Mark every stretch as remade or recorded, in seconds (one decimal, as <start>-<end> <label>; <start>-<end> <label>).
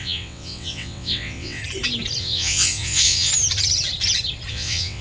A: 0.0-1.6 remade; 1.6-2.2 recorded; 2.2-3.3 remade; 3.3-4.5 recorded; 4.5-5.0 remade